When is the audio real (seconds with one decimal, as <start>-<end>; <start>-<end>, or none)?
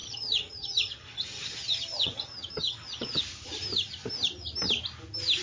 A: 3.2-5.4